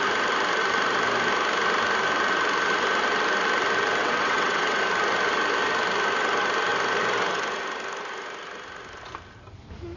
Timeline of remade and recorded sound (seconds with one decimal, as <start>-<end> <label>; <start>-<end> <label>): 0.0-4.0 recorded; 4.0-4.8 remade; 4.8-10.0 recorded